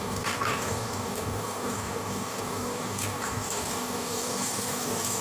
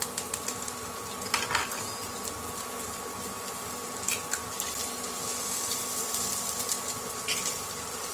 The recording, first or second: second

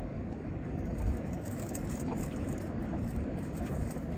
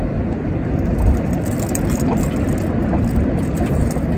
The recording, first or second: second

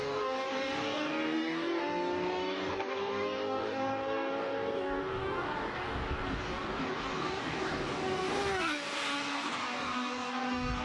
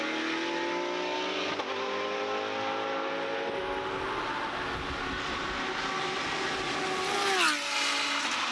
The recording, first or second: second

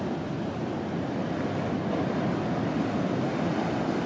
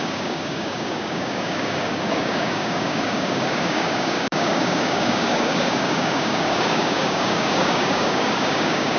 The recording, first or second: first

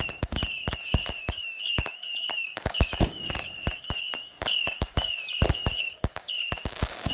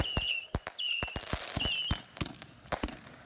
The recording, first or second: second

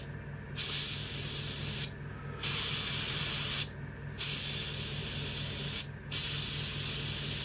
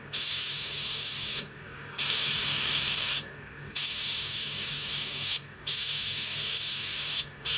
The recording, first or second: first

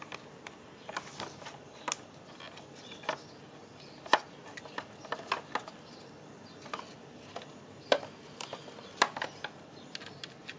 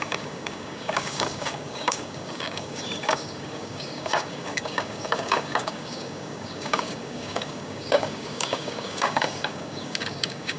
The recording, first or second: first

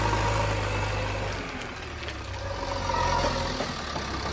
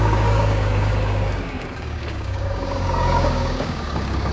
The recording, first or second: first